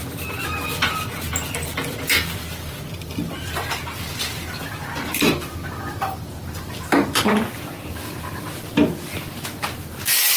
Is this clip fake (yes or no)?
no